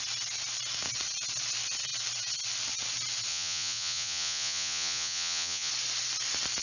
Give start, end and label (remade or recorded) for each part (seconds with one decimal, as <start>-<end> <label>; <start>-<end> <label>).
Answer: 0.0-3.3 recorded; 3.3-5.7 remade; 5.7-6.6 recorded